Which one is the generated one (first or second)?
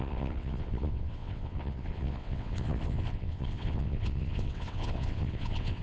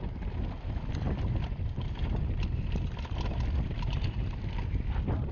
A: first